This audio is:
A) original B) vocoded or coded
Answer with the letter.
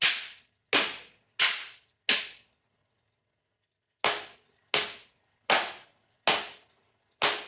A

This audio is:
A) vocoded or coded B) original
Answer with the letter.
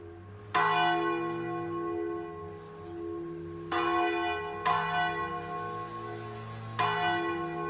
B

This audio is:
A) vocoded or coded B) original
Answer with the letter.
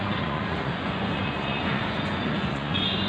A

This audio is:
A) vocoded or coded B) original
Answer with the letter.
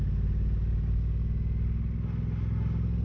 B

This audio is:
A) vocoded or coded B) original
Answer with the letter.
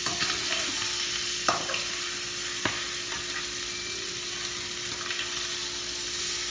B